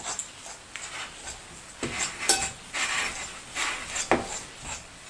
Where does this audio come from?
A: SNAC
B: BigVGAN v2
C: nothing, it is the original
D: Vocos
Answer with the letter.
C